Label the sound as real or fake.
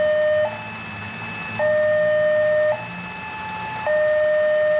real